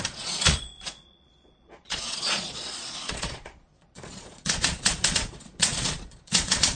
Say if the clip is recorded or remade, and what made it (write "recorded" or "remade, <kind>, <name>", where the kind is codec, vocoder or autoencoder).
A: remade, vocoder, Vocos